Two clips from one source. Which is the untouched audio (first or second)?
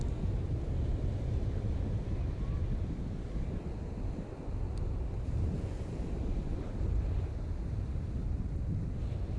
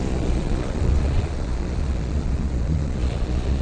first